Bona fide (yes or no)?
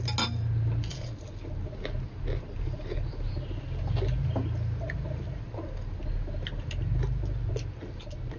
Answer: yes